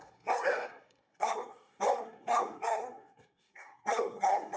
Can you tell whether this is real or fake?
fake